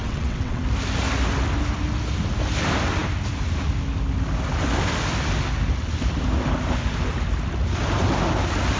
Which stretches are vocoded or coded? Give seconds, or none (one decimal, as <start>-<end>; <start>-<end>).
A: 0.0-0.6